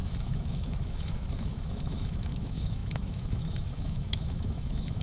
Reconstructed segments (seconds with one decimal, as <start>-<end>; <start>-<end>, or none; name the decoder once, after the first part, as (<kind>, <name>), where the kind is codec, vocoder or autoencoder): 0.0-5.0 (autoencoder, DAC-VAE)